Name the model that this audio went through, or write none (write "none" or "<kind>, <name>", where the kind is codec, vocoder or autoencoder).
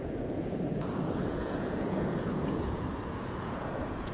vocoder, Vocos